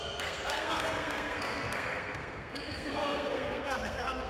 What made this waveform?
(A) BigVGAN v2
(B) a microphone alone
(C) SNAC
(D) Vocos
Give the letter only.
C